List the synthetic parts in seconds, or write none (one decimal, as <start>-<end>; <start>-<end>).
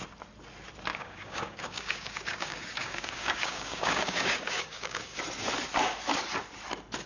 0.9-5.2